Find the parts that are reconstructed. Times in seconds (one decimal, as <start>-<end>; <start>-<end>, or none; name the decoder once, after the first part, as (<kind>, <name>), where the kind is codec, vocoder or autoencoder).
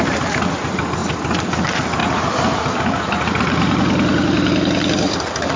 none